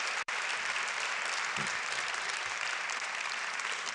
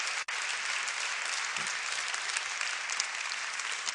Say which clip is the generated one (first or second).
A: first